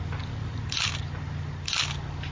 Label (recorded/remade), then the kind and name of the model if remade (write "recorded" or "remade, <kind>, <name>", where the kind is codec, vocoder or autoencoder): recorded